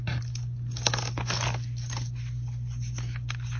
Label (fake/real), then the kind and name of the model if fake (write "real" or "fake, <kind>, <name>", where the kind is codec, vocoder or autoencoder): real